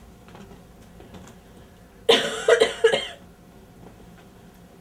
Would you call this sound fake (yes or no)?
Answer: no